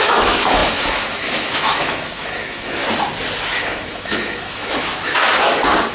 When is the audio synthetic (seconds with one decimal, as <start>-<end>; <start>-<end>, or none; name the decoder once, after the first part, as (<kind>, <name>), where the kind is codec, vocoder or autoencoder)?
0.0-2.8 (autoencoder, DAC-VAE); 3.5-4.9